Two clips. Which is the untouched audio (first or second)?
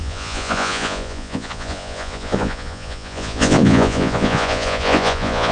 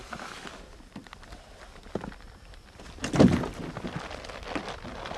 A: second